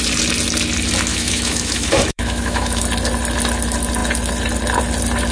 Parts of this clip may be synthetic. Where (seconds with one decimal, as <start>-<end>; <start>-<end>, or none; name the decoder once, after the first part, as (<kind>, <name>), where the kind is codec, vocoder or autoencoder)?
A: 1.1-2.8 (autoencoder, DAC-VAE)